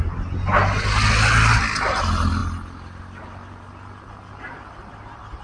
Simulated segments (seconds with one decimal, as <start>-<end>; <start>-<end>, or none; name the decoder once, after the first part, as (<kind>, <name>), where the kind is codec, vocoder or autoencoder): none